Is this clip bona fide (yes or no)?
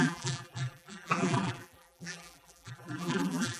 no